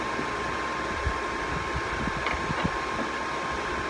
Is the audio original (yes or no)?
yes